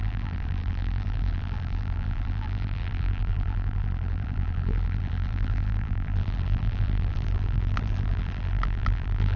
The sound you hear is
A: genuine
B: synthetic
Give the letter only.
B